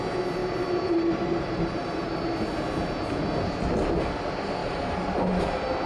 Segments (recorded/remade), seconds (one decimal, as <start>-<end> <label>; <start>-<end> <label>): 0.0-0.4 recorded; 0.4-2.2 remade; 2.2-4.6 recorded; 4.6-5.4 remade; 5.4-5.9 recorded